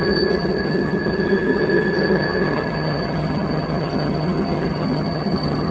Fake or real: fake